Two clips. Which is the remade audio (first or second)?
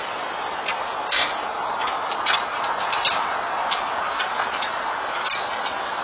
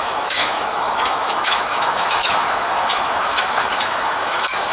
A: second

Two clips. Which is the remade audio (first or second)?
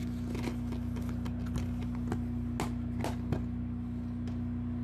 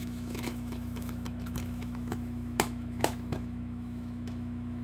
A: second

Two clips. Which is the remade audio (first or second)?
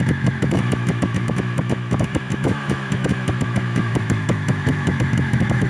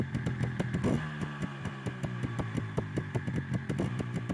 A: first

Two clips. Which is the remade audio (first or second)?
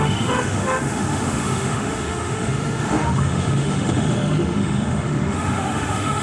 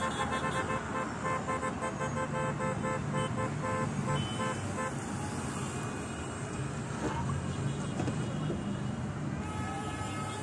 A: first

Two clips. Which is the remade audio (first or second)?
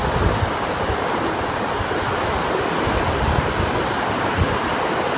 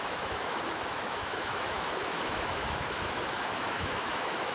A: second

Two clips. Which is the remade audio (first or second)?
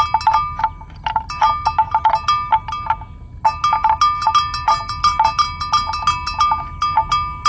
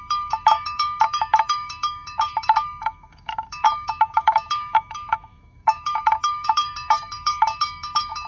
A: second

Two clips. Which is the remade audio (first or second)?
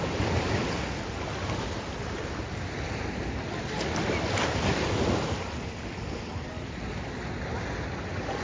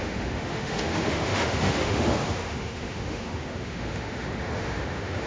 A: second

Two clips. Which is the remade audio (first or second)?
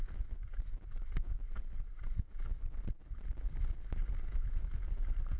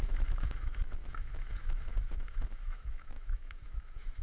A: second